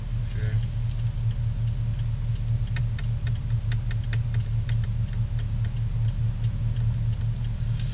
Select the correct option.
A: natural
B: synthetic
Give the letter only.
A